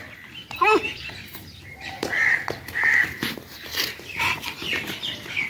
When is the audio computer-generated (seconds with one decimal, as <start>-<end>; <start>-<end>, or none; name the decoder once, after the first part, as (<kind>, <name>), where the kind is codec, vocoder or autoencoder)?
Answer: 0.4-2.1 (vocoder, BigVGAN v2); 3.5-4.9